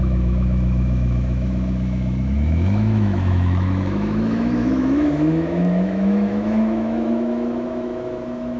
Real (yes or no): no